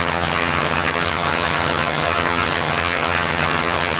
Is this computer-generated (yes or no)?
yes